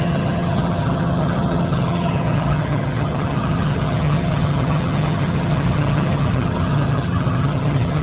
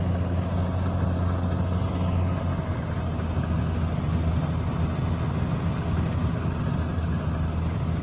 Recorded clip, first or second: second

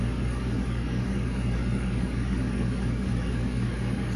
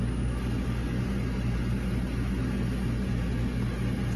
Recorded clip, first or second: second